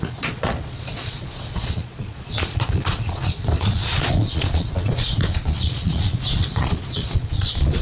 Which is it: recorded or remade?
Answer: remade